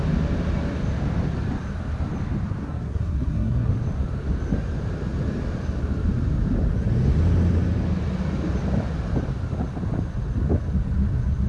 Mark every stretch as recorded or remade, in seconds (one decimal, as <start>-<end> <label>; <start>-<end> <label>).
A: 0.0-2.6 recorded; 2.6-3.7 remade; 3.7-11.5 recorded